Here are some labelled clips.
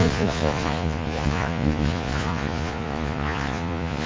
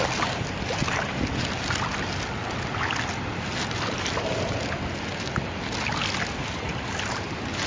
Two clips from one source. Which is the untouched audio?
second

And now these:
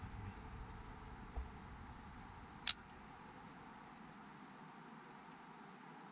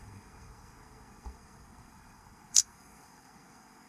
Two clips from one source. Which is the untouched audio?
first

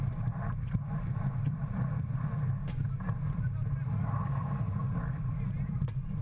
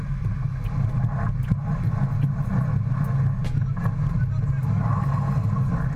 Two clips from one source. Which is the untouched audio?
second